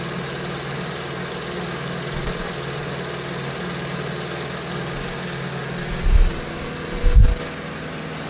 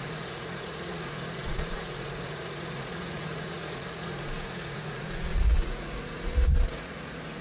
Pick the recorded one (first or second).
first